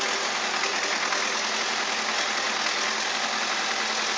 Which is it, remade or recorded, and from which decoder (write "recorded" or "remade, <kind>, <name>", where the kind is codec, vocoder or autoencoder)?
recorded